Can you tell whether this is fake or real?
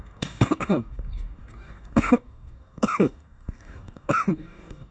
fake